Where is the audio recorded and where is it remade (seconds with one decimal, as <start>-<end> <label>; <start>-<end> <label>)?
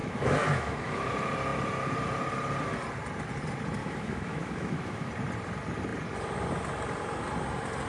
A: 0.0-1.1 remade; 1.1-3.8 recorded; 3.8-5.1 remade; 5.1-7.9 recorded